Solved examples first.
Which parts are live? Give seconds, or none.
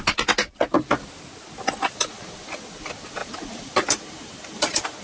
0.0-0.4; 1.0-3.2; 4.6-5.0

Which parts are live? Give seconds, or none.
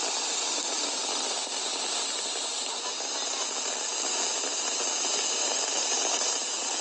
0.0-2.5; 3.4-6.8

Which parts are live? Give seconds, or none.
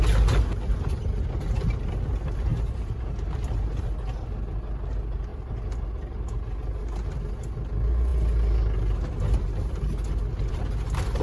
0.0-2.5; 3.0-11.2